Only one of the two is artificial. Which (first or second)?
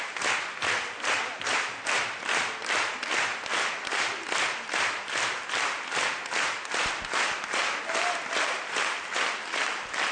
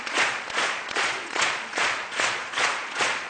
second